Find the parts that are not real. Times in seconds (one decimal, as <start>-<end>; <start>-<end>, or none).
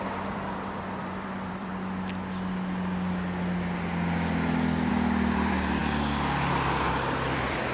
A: 0.0-1.7; 4.9-5.8; 6.5-7.7